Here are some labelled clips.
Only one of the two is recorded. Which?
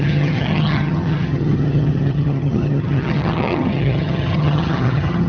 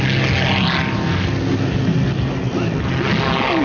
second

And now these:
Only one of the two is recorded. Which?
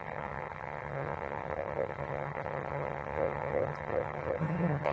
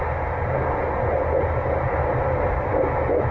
second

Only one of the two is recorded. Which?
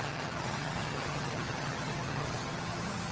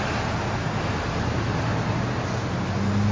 second